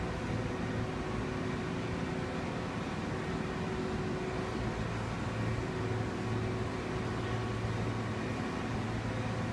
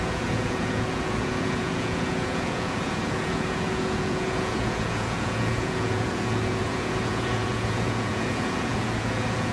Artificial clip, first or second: second